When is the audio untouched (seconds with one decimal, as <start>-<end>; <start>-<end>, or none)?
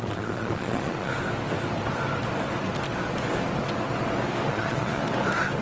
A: 1.1-4.5; 5.0-5.6